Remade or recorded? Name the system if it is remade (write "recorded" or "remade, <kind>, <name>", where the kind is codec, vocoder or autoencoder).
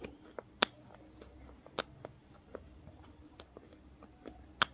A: recorded